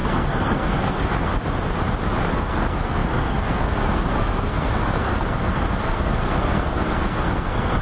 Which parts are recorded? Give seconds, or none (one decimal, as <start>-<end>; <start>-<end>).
1.3-2.3